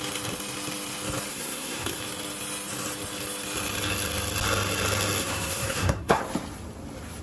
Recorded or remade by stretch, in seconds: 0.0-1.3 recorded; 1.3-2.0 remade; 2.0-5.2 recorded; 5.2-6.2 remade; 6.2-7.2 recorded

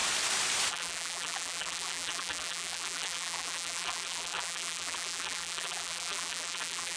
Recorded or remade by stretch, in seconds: 0.0-0.7 recorded; 0.7-7.0 remade

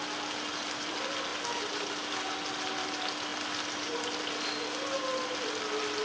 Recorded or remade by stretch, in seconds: 0.0-6.0 recorded

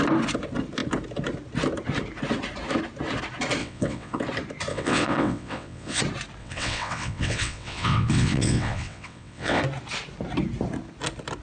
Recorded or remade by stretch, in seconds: 0.0-3.6 recorded; 3.6-4.2 remade; 4.2-4.7 recorded; 4.7-6.0 remade; 6.0-6.4 recorded; 6.4-9.6 remade; 9.6-11.4 recorded

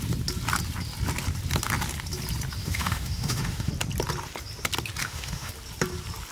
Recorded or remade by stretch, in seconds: 0.0-2.6 recorded; 2.6-3.7 remade; 3.7-5.0 recorded; 5.0-5.5 remade; 5.5-6.3 recorded

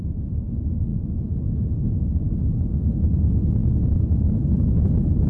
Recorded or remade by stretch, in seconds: 0.0-5.3 recorded